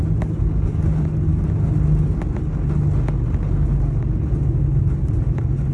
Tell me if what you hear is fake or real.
real